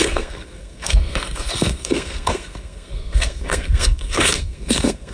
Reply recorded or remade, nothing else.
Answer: remade